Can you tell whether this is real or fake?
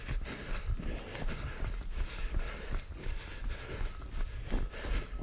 real